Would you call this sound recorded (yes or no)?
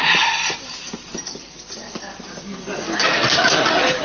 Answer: yes